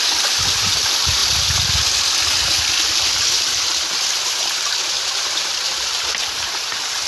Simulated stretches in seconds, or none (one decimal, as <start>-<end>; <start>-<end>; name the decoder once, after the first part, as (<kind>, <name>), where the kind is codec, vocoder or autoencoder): none